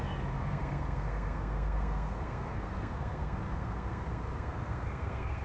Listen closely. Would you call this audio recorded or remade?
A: remade